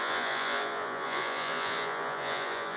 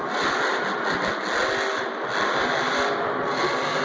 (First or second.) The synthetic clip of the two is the first